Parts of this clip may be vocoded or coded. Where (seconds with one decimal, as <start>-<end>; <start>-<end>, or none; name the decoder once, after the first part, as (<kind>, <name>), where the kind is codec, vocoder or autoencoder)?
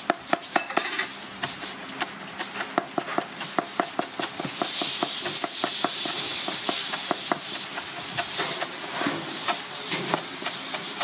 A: 0.0-1.8 (vocoder, BigVGAN v2); 5.5-6.3; 7.8-11.0